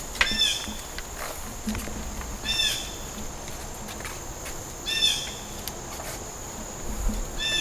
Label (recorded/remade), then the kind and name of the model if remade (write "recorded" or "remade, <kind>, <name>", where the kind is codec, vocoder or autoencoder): recorded